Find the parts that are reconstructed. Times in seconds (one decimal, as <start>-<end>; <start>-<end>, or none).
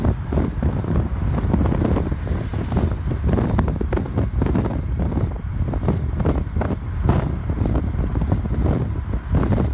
none